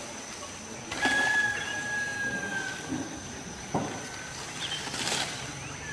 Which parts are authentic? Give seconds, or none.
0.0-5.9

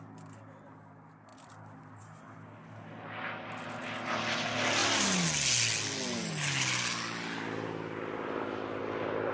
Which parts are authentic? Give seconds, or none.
0.0-9.3

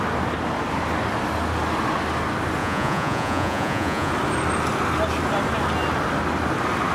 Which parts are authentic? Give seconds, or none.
0.0-2.6; 4.1-6.9

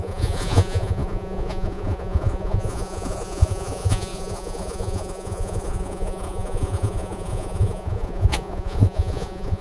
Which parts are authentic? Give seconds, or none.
none

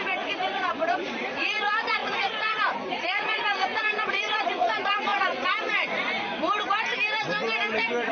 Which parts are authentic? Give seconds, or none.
6.3-8.1

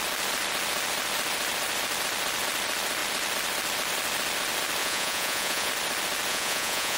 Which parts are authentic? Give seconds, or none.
0.0-4.8; 5.7-6.3